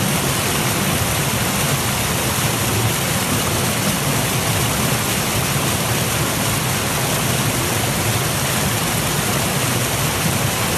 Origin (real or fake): real